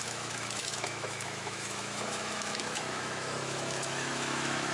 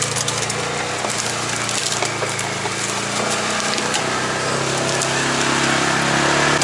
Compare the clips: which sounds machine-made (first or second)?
first